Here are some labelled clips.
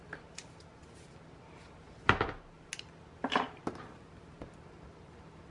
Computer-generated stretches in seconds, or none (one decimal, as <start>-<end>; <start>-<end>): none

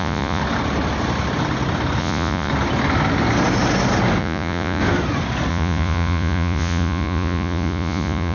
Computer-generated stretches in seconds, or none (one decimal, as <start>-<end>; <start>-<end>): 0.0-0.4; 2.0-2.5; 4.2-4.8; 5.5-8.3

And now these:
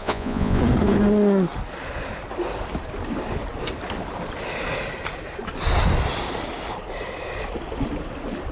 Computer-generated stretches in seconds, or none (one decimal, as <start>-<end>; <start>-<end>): 0.0-0.6